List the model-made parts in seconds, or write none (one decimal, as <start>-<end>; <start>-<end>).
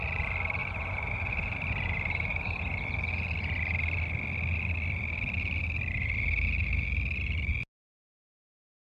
0.6-2.9